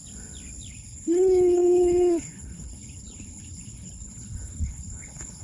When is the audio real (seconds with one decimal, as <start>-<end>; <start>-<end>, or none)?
0.0-0.7